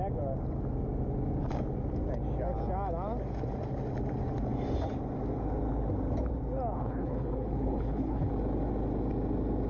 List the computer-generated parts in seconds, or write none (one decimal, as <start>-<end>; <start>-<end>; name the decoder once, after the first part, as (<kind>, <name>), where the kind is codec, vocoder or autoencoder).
6.8-8.3 (codec, HILCodec)